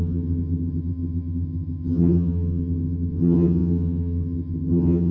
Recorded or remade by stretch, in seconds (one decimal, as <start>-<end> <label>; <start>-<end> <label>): 0.0-5.1 remade